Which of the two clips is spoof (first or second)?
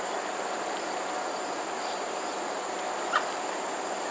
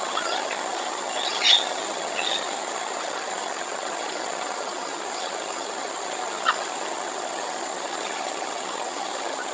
second